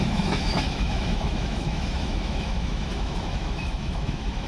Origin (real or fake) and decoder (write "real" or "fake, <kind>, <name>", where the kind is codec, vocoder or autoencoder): fake, autoencoder, DAC-VAE